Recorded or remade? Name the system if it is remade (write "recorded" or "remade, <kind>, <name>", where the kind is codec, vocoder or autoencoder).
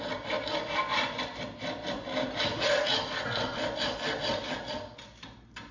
recorded